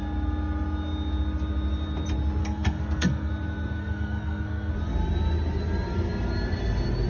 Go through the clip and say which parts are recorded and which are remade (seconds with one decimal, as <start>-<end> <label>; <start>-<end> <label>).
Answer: 0.0-2.4 recorded; 2.4-3.3 remade; 3.3-3.8 recorded; 3.8-4.7 remade; 4.7-7.1 recorded